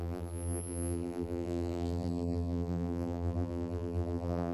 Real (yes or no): no